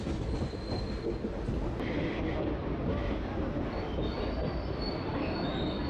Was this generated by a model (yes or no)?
no